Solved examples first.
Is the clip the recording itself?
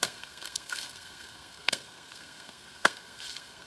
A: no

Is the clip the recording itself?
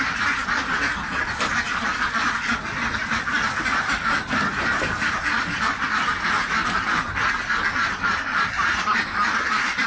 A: yes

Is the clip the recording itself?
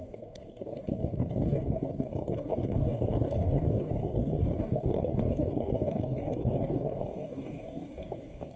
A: no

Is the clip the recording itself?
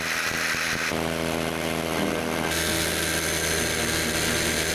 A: yes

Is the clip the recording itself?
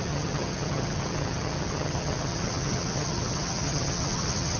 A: no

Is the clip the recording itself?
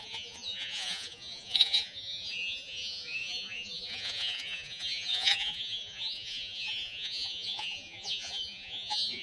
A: no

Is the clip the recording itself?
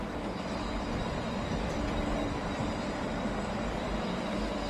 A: no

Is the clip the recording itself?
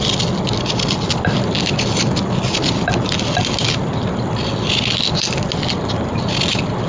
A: yes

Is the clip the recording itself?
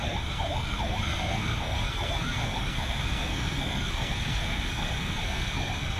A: no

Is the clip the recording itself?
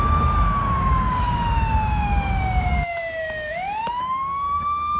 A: no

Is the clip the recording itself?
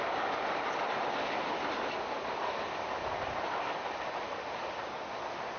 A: yes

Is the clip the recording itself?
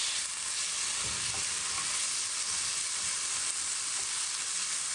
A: yes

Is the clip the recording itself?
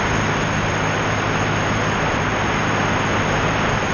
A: yes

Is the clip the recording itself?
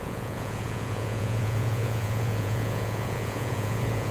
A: no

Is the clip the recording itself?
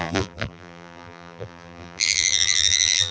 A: no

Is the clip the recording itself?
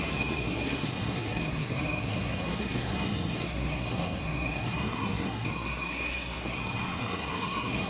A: no